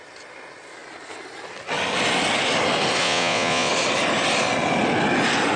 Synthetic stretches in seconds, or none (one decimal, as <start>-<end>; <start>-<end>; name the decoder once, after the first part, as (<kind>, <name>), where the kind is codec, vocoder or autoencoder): 3.0-3.7 (vocoder, Vocos)